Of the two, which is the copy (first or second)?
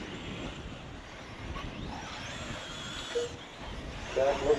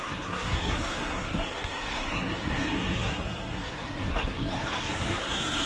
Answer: second